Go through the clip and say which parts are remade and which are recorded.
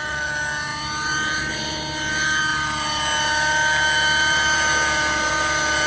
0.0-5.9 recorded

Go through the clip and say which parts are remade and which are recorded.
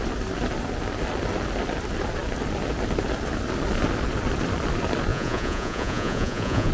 0.0-5.1 recorded; 5.1-6.7 remade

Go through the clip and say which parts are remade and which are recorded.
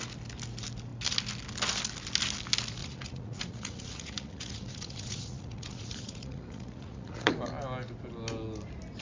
0.0-2.8 recorded; 2.8-7.3 remade; 7.3-9.0 recorded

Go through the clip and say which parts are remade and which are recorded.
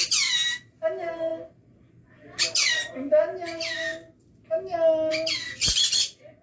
0.0-6.4 recorded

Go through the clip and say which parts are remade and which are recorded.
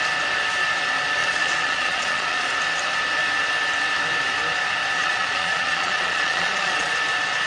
0.0-1.2 recorded; 1.2-2.5 remade; 2.5-5.0 recorded; 5.0-6.9 remade; 6.9-7.5 recorded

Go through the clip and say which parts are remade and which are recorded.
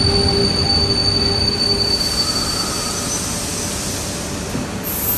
0.0-5.2 recorded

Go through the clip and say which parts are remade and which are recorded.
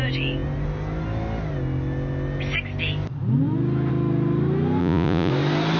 0.0-4.8 recorded; 4.8-5.3 remade; 5.3-5.8 recorded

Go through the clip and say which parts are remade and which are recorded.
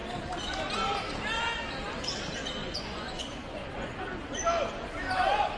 0.0-2.6 recorded; 2.6-4.0 remade; 4.0-5.6 recorded